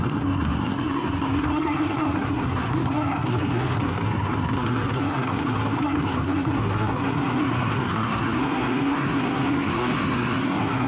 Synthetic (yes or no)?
yes